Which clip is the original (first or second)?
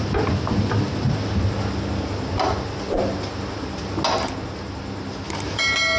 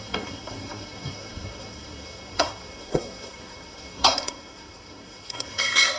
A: first